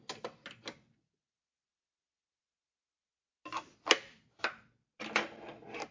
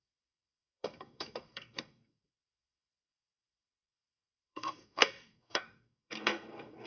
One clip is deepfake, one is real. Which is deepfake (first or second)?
second